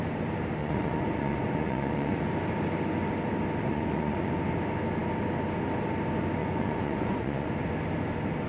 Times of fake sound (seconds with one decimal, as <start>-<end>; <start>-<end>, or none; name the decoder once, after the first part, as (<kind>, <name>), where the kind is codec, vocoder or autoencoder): 0.6-2.2 (vocoder, Vocos); 3.6-4.3; 6.4-7.5